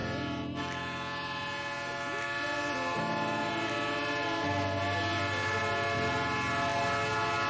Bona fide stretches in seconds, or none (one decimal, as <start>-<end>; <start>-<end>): 0.0-7.5